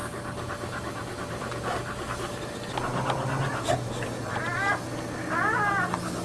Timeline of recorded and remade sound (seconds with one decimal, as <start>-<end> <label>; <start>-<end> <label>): 0.0-6.2 recorded